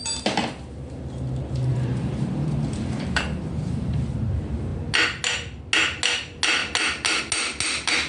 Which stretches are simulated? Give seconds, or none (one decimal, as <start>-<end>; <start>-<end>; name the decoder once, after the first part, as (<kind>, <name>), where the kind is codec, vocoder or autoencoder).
1.7-4.2 (vocoder, BigVGAN v2)